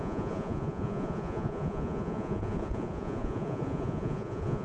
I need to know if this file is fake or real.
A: fake